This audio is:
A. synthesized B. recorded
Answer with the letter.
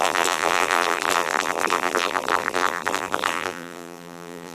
A